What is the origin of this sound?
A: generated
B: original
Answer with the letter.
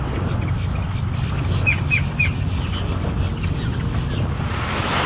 B